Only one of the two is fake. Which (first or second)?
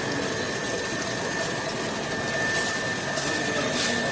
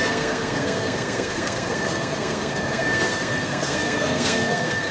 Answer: second